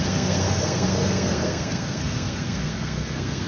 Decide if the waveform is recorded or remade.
remade